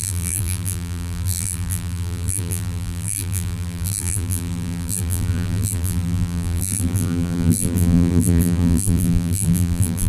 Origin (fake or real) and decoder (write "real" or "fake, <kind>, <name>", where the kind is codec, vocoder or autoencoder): fake, vocoder, BigVGAN v2